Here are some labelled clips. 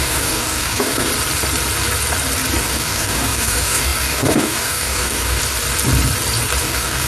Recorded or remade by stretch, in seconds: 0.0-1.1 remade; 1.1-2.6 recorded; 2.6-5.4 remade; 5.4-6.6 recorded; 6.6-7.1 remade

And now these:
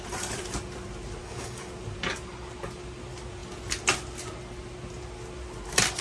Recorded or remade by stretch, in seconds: 0.0-1.2 recorded; 1.2-1.7 remade; 1.7-6.0 recorded